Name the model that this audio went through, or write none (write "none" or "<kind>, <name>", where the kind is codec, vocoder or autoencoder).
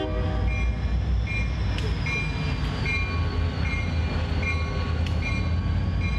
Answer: none